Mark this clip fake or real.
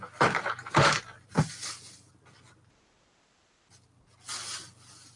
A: real